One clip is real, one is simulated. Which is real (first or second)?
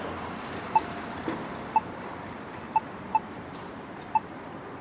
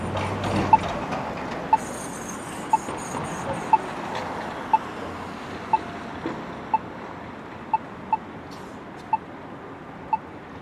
second